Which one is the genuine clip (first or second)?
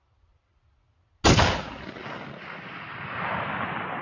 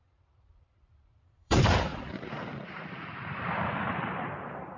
first